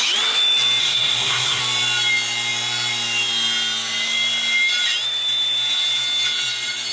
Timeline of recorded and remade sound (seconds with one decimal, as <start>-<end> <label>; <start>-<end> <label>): 0.0-0.8 recorded; 0.8-1.6 remade; 1.6-6.9 recorded